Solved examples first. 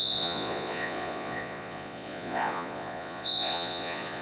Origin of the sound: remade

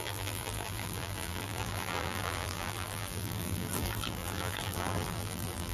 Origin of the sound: remade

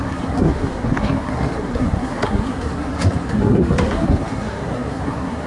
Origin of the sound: remade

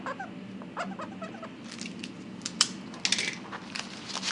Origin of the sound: recorded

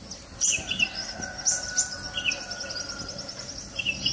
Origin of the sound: recorded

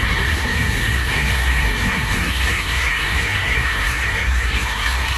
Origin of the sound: remade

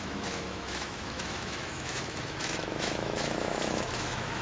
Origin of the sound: remade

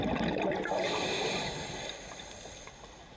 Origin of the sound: recorded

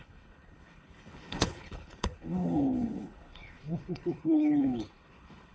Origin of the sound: remade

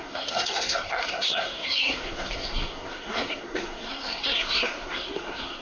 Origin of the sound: remade